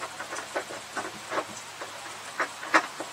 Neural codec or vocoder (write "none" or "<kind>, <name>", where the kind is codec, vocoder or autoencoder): none